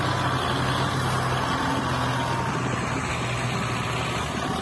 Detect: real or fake real